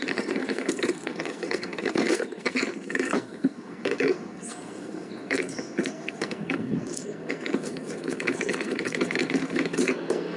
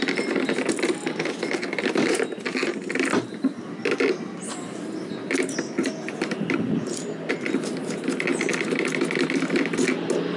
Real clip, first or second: second